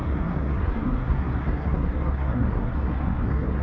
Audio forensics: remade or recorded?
remade